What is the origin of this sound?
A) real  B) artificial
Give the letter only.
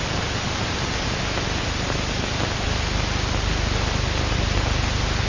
A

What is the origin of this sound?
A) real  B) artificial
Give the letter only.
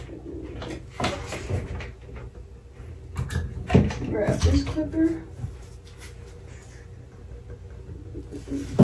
A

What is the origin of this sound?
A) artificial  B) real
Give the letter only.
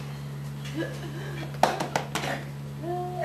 B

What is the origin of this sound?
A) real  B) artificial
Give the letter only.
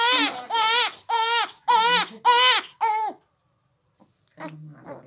A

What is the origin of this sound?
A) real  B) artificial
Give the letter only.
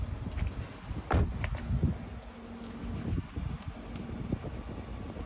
A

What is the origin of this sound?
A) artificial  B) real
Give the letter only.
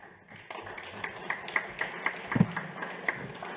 B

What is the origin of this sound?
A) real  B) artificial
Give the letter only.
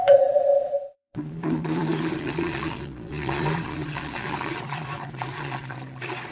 B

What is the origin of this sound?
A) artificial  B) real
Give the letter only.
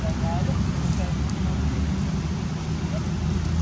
B